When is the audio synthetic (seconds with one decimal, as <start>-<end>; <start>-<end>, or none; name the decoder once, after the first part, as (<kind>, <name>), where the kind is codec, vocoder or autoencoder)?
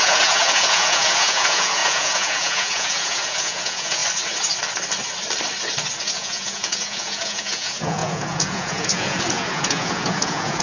0.0-4.0 (vocoder, Vocos); 6.0-10.6